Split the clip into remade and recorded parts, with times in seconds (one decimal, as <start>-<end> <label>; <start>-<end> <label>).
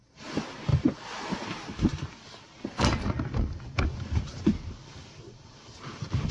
0.0-0.7 recorded; 0.7-1.3 remade; 1.3-6.3 recorded